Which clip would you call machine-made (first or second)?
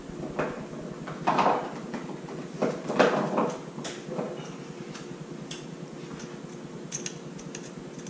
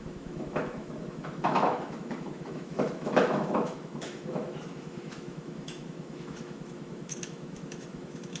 second